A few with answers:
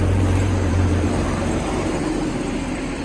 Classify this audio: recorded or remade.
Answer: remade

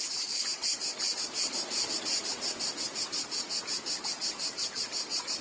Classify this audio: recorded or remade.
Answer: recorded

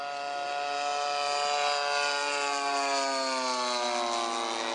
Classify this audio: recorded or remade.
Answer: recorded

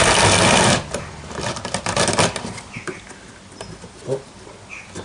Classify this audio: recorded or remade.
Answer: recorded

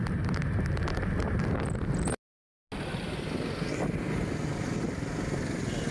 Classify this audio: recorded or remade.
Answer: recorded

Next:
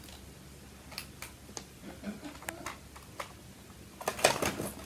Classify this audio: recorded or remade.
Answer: recorded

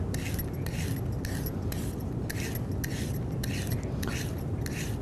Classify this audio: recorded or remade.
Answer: recorded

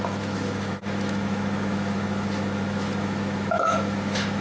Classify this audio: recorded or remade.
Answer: remade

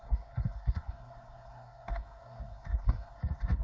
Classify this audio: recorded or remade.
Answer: remade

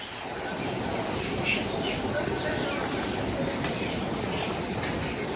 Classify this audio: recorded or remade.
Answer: recorded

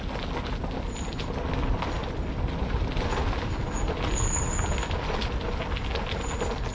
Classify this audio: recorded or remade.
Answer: recorded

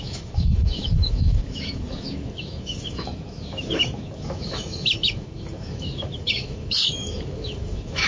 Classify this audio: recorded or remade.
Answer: remade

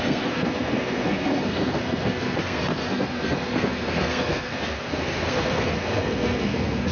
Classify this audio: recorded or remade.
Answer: remade